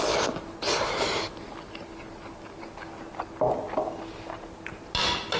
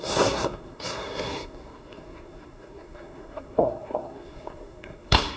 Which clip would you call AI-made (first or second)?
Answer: second